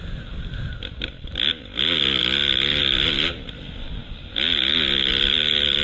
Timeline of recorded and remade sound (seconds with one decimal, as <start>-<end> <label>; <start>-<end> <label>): 0.0-5.8 recorded